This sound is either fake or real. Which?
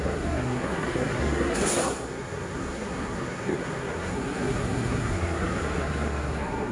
fake